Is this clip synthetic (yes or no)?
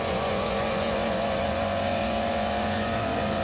yes